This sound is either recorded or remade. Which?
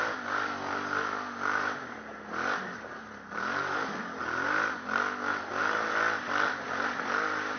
recorded